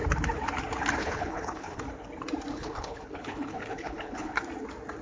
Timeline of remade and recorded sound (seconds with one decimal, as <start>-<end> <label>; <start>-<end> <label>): 0.0-1.0 recorded; 1.0-1.8 remade; 1.8-2.5 recorded; 2.5-4.4 remade; 4.4-5.0 recorded